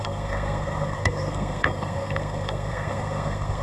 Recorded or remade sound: remade